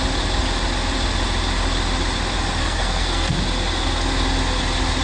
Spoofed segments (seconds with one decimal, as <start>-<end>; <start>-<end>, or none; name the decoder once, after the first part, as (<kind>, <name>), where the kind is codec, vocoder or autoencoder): 2.6-3.4 (codec, SNAC)